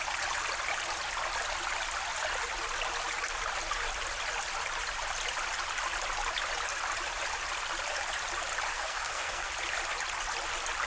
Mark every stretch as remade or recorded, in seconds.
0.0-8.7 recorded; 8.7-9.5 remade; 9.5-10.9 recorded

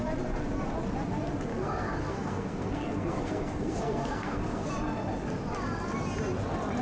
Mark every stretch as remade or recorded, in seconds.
0.0-1.5 recorded; 1.5-4.7 remade; 4.7-6.8 recorded

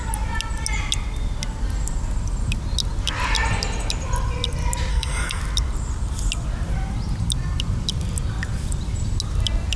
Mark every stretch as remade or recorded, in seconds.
0.0-4.9 recorded; 4.9-5.4 remade; 5.4-9.8 recorded

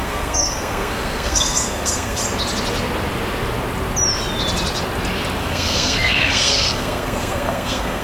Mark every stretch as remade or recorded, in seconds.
0.0-2.2 remade; 2.2-5.4 recorded; 5.4-8.0 remade

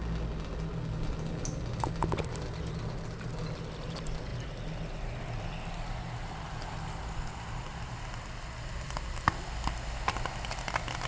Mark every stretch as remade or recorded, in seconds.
0.0-11.1 recorded